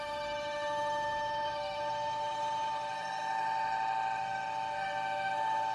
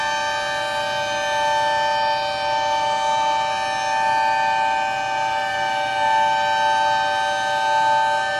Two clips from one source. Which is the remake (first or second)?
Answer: first